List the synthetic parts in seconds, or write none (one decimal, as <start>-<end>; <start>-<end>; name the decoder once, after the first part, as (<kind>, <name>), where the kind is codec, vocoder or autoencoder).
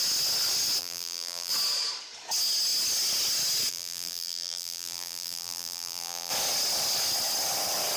0.8-1.5 (vocoder, BigVGAN v2); 3.7-6.3